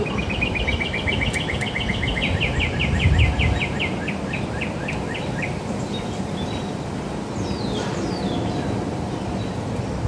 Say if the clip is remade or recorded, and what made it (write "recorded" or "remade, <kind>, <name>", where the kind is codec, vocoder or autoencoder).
recorded